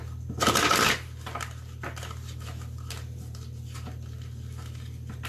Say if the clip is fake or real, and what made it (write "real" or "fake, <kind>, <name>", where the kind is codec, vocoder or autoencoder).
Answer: real